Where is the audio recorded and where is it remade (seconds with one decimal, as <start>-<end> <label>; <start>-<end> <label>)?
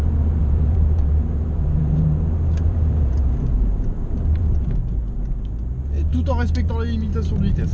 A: 0.0-0.4 recorded; 0.4-5.0 remade; 5.0-7.7 recorded